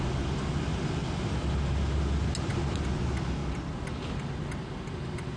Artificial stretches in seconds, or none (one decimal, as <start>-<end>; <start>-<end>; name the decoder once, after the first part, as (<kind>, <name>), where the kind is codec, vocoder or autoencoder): none